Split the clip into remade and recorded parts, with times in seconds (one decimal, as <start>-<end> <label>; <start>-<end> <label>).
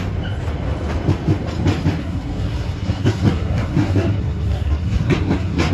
0.0-2.0 recorded; 2.0-5.7 remade